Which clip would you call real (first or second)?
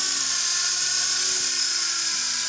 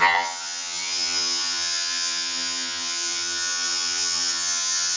first